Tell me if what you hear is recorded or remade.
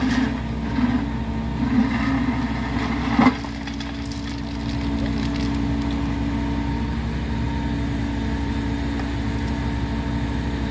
recorded